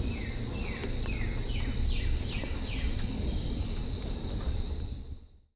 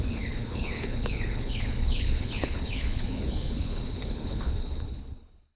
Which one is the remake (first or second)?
second